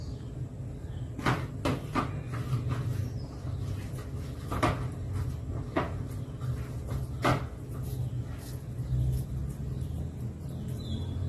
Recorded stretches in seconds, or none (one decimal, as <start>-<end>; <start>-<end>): 0.0-11.3

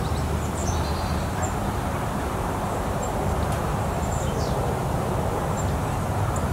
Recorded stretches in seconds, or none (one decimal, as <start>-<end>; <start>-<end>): 0.0-0.6; 2.9-3.7

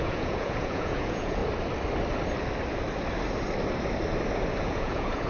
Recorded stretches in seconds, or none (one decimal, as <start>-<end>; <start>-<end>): 1.4-4.6

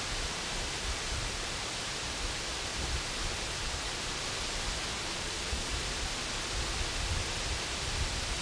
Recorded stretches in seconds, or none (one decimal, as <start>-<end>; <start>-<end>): 0.0-5.1; 5.7-8.4

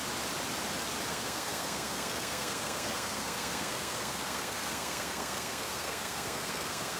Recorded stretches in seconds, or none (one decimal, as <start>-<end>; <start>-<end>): 0.0-1.1

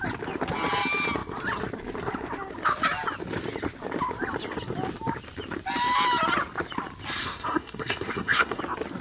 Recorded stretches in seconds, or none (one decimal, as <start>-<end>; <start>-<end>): 0.0-7.2; 8.6-9.0

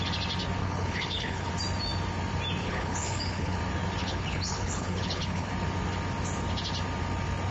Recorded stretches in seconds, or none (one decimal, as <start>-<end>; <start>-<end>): 0.0-0.6; 1.5-2.6; 3.6-4.0; 5.5-7.5

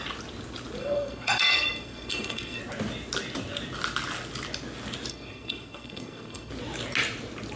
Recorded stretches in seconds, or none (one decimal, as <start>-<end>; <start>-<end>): 0.0-0.8; 2.6-5.1; 6.5-7.6